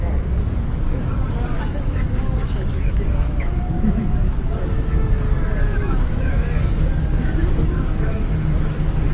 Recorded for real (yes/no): no